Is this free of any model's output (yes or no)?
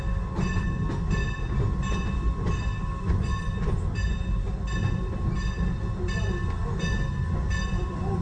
yes